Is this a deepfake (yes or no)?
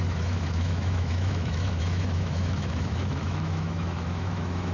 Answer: yes